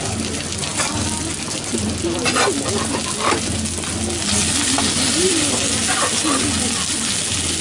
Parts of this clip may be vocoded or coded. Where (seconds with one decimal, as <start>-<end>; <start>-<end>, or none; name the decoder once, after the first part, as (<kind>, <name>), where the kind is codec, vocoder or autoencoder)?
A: none